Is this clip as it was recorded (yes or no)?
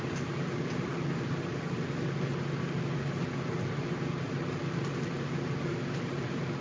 yes